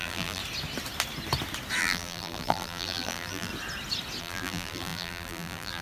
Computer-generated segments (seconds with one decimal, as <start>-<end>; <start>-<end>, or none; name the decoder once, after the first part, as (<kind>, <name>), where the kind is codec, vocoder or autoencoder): 0.0-0.4 (vocoder, BigVGAN v2); 1.8-3.5; 4.2-5.8